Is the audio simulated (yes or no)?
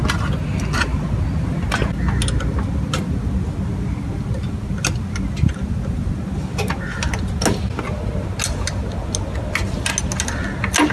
no